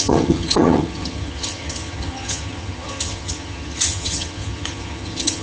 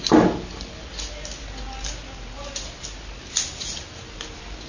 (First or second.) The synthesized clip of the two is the first